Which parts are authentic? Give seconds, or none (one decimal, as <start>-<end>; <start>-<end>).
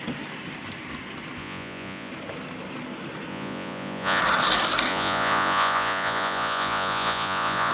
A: 0.0-1.4; 2.1-3.3; 4.2-4.9